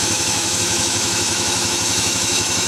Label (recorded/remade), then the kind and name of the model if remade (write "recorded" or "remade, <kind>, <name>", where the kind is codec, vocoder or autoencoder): remade, autoencoder, DAC-VAE